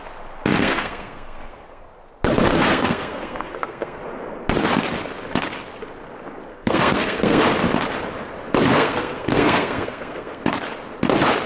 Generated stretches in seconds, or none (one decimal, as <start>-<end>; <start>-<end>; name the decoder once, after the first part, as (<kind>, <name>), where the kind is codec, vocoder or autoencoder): 0.6-1.8 (codec, SNAC); 2.5-4.0; 6.5-7.4; 8.7-10.4